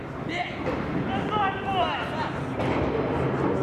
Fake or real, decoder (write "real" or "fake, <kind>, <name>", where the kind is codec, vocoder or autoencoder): real